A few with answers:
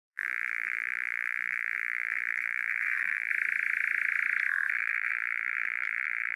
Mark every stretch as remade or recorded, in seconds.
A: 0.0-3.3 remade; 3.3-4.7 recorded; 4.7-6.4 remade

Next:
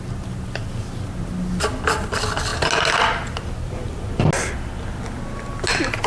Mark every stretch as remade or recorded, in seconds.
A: 0.0-6.1 recorded

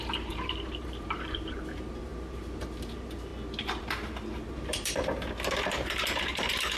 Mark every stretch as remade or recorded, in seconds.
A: 0.0-3.3 remade; 3.3-3.8 recorded; 3.8-6.8 remade

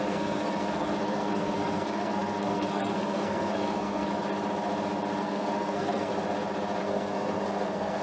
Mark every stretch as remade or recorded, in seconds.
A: 0.0-4.1 remade; 4.1-5.2 recorded; 5.2-6.1 remade; 6.1-6.8 recorded; 6.8-8.0 remade

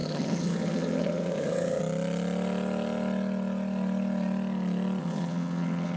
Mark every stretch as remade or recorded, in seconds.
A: 0.0-1.8 remade; 1.8-5.0 recorded; 5.0-6.0 remade

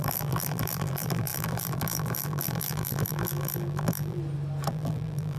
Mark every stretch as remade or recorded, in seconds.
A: 0.0-4.2 remade; 4.2-4.7 recorded; 4.7-5.4 remade

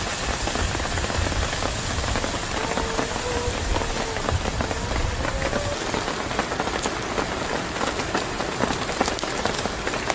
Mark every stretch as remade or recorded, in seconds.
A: 0.0-10.1 recorded